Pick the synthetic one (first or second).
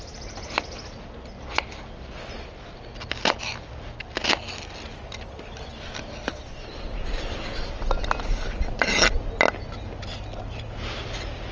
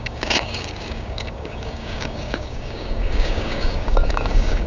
second